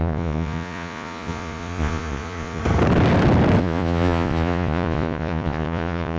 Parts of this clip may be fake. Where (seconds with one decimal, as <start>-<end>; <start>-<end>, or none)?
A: 0.0-2.6; 3.6-6.2